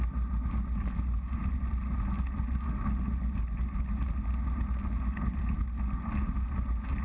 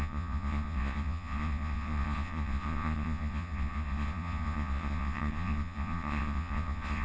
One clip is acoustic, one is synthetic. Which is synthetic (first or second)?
second